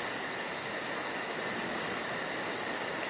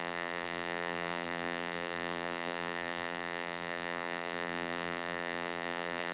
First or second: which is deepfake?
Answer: second